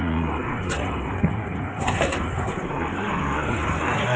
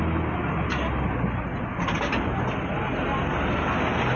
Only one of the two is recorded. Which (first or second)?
second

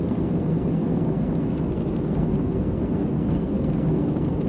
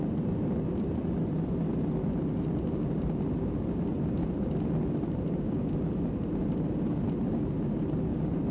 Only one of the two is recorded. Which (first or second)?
second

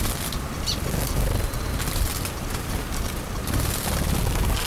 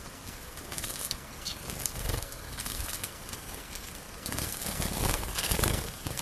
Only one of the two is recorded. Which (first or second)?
first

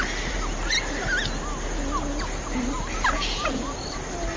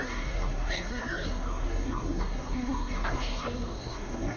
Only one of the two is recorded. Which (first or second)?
first